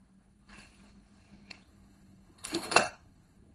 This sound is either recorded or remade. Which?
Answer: remade